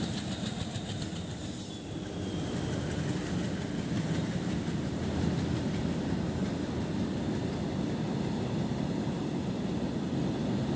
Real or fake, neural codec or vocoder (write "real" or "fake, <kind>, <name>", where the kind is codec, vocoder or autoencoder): real